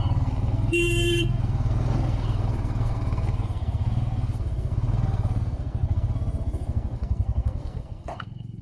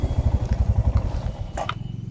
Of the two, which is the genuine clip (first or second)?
second